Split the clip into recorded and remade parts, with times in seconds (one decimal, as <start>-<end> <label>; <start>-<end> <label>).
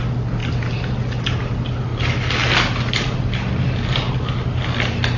0.0-5.2 recorded